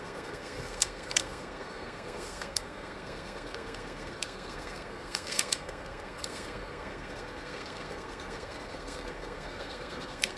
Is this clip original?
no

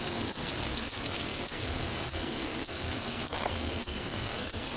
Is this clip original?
no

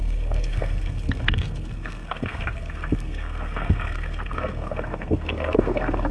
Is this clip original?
no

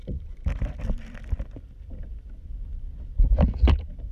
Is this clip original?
yes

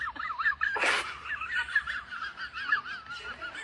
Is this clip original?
yes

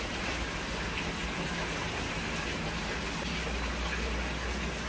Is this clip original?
yes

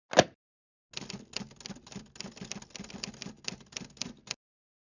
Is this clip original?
yes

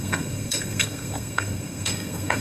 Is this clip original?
no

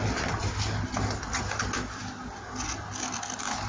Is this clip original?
yes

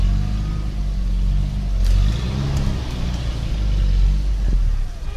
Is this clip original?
yes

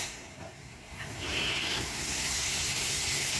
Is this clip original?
no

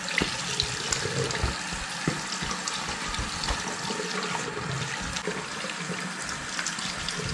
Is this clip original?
yes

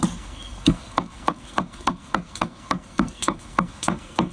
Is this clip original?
no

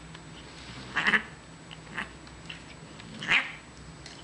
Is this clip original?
yes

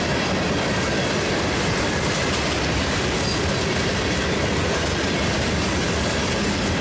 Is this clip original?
yes